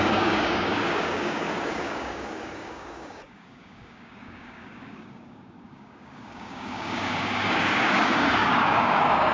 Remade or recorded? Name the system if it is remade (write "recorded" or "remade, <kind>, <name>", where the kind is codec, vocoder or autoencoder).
remade, codec, DAC